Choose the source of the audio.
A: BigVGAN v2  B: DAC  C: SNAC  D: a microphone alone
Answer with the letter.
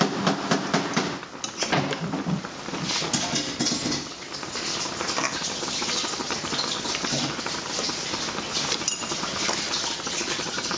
D